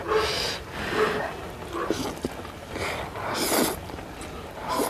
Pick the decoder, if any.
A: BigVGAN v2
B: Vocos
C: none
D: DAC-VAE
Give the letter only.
C